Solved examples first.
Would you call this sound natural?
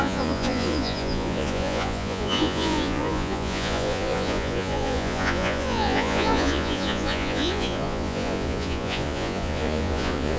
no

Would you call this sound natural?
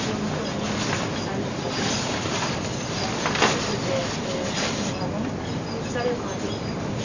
yes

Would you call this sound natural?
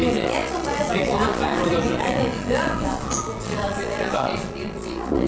no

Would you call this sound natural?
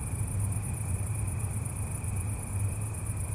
yes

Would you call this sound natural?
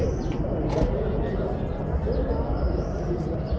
yes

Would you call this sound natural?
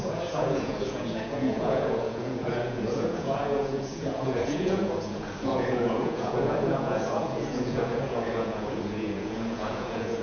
no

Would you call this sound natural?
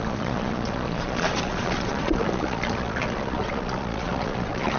no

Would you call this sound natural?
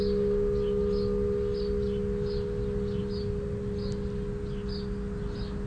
yes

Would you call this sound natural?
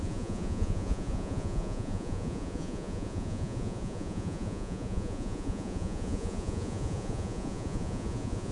no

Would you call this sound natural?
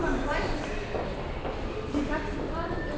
yes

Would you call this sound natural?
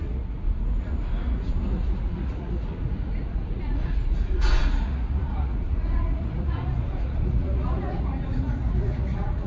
no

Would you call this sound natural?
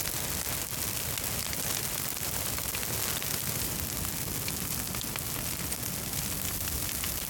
yes